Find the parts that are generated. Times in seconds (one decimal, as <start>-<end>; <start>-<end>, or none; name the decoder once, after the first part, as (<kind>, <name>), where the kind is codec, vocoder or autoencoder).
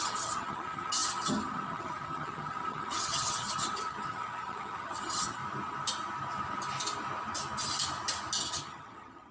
0.0-5.4 (vocoder, HiFi-GAN); 8.5-9.3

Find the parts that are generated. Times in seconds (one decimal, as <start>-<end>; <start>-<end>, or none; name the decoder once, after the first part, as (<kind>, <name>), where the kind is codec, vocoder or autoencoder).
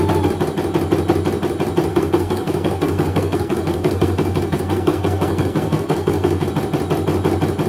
1.9-6.5 (codec, SNAC)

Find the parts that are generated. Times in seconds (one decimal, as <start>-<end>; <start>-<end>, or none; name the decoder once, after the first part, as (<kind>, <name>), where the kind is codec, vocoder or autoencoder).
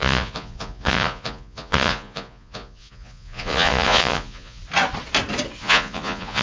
0.0-4.6 (vocoder, Vocos); 5.6-6.4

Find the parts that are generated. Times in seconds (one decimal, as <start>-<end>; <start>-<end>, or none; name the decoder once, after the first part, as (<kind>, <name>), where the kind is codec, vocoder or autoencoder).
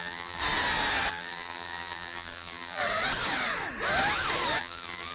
0.0-0.4 (vocoder, BigVGAN v2); 1.1-2.8; 4.6-5.1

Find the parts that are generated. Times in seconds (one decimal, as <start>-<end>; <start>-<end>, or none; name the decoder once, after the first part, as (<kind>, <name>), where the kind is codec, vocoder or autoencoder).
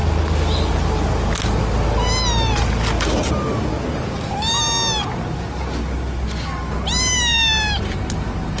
none